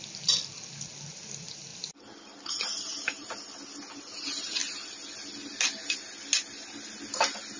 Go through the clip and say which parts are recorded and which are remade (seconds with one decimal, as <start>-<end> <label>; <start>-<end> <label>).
0.0-7.6 recorded